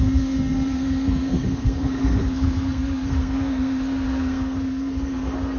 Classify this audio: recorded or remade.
remade